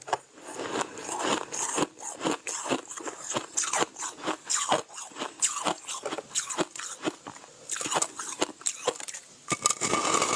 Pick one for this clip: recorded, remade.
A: recorded